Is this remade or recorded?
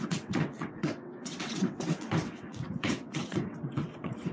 remade